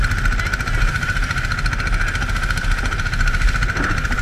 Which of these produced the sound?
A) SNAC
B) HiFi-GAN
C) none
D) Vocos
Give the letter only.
C